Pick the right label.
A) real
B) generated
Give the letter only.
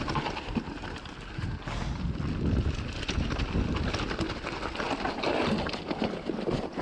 A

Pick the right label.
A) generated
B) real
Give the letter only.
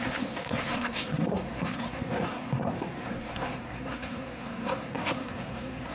A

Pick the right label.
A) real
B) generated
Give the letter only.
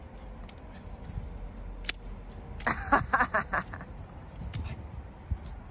A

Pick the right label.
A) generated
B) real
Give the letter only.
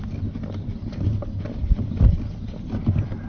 B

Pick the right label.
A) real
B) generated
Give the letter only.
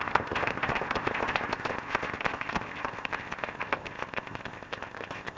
B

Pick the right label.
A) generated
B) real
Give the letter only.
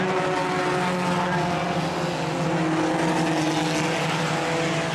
B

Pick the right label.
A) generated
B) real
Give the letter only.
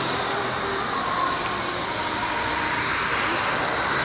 B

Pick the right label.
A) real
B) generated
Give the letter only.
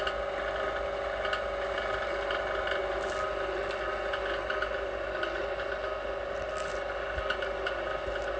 A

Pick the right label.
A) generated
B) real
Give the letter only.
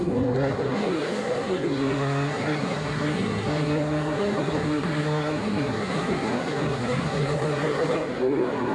A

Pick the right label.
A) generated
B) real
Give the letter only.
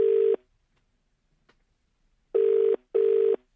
B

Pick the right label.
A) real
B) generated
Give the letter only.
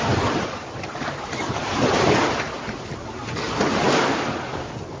A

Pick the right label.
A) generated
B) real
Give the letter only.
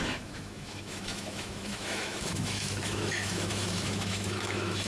A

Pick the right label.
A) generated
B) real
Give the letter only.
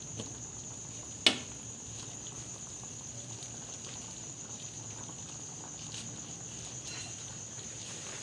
B